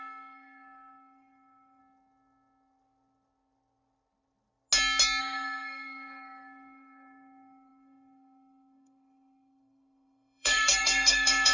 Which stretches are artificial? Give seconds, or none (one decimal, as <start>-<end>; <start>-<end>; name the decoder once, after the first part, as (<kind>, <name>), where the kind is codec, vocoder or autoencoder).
0.0-1.8 (codec, SNAC); 5.2-11.5